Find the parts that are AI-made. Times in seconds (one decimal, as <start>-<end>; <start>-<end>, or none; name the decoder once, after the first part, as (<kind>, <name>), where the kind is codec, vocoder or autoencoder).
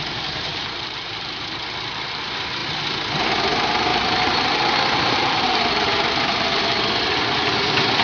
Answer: 0.5-2.2 (vocoder, BigVGAN v2); 3.9-6.8